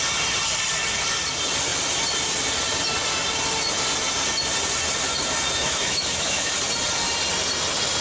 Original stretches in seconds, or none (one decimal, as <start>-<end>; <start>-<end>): 0.0-5.6; 6.5-8.0